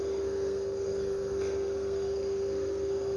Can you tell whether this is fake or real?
fake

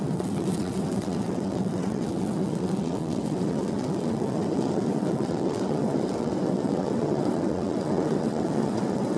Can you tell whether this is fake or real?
fake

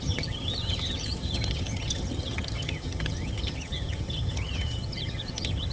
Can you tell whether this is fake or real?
fake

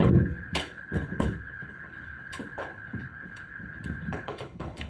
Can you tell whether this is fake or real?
fake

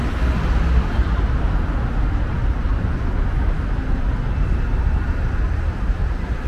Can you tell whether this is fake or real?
real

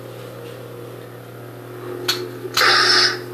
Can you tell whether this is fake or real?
real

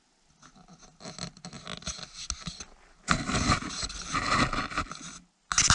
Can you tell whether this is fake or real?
real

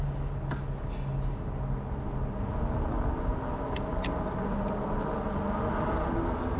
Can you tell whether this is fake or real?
real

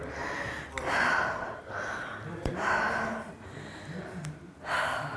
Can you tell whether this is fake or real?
real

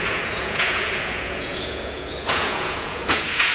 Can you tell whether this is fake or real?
fake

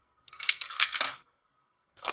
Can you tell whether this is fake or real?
fake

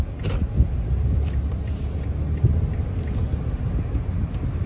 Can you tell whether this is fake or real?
real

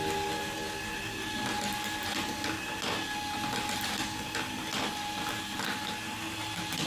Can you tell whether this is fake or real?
real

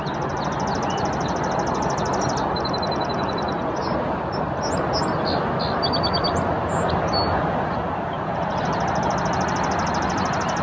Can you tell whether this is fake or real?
real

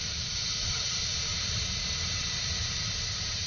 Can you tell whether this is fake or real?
fake